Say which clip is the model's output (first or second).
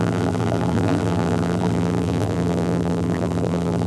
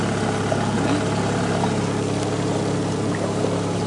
first